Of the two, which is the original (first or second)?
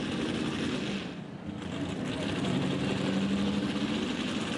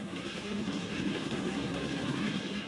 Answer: first